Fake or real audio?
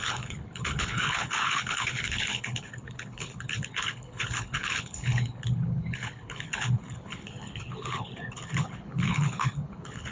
fake